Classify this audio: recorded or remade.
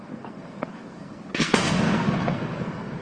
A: remade